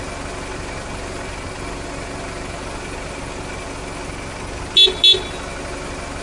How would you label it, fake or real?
real